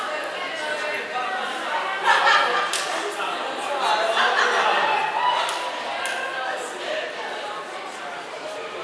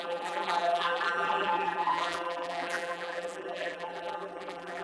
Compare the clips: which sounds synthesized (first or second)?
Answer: second